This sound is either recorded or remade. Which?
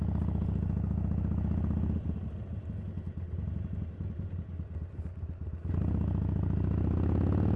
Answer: recorded